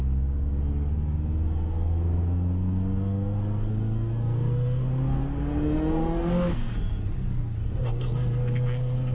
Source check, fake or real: fake